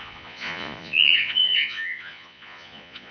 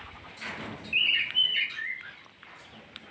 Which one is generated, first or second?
first